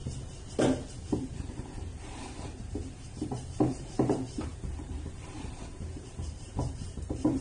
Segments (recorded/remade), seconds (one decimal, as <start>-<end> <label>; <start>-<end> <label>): 0.0-1.1 recorded; 1.1-7.4 remade